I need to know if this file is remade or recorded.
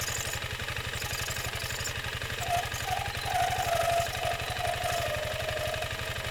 recorded